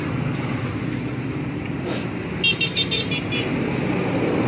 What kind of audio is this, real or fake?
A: real